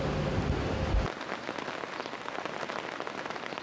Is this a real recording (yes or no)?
yes